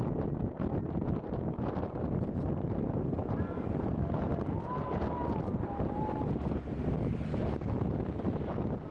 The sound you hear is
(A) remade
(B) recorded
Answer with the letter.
B